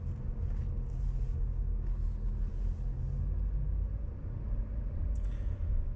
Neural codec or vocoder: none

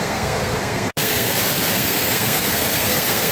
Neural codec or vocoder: codec, SNAC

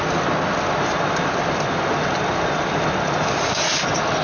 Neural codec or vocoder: none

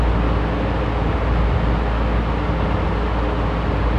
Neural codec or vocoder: none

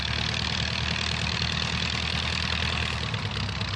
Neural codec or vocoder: none